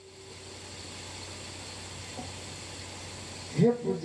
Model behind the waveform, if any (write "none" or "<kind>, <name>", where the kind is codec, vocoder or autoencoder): none